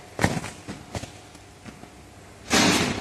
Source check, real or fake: real